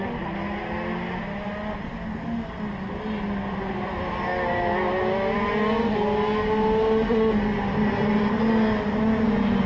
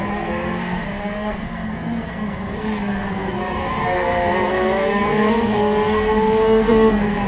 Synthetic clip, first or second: second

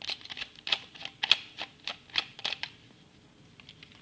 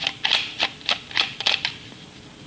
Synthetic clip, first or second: second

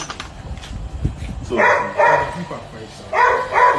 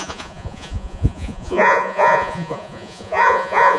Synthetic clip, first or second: second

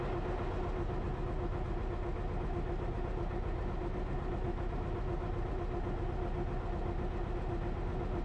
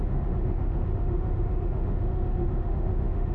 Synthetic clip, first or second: second